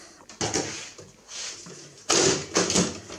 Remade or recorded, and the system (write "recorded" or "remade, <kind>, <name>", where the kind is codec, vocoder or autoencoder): recorded